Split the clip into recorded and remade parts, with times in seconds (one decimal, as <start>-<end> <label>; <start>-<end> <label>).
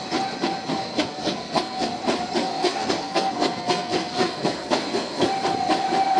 0.0-0.7 recorded; 0.7-1.9 remade; 1.9-2.4 recorded; 2.4-5.3 remade; 5.3-6.2 recorded